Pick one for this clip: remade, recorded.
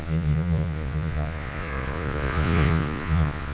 remade